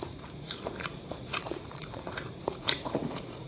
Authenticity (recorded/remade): remade